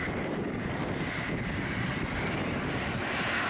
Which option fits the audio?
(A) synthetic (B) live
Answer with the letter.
B